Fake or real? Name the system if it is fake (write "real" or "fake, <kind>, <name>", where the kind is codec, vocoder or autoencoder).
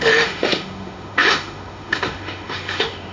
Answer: fake, autoencoder, DAC-VAE